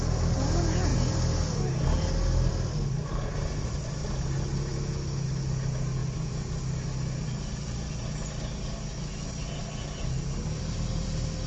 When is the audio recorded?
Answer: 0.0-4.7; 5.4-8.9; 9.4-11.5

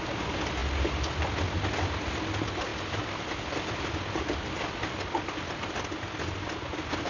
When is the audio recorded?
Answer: 0.0-7.1